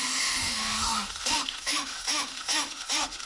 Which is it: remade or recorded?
remade